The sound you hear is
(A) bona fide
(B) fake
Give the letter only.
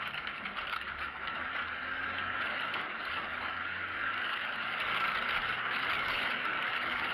B